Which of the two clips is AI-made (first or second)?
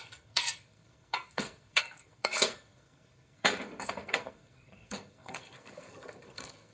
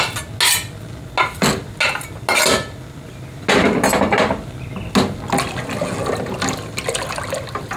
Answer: first